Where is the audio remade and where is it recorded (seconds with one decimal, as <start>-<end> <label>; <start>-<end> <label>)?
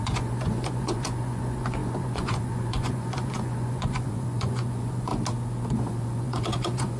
0.0-5.1 remade; 5.1-5.7 recorded; 5.7-7.0 remade